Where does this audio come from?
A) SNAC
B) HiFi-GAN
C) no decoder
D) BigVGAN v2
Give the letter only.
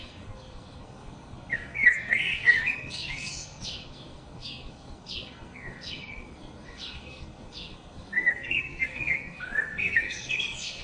A